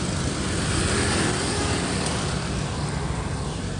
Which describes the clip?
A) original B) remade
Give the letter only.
A